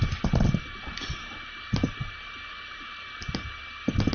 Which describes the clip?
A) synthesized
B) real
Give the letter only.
A